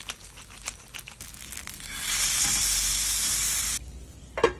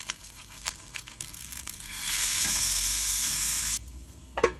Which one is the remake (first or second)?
second